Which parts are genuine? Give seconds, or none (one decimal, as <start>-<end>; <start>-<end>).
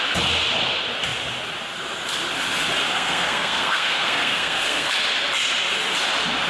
0.0-2.8; 4.9-6.5